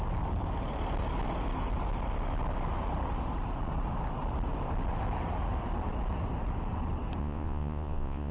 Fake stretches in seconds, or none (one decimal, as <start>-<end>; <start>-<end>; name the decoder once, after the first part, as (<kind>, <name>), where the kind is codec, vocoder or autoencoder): 7.2-8.3 (vocoder, Vocos)